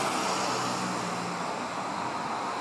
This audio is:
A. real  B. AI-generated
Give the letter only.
A